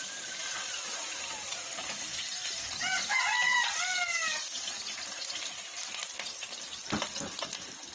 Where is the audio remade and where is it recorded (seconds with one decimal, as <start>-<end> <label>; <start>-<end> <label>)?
0.0-2.1 remade; 2.1-6.5 recorded; 6.5-7.9 remade